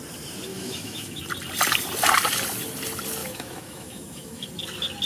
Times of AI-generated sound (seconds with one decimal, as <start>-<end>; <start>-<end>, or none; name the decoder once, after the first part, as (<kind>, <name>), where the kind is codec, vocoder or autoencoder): 0.5-1.2 (autoencoder, DAC-VAE); 3.2-4.5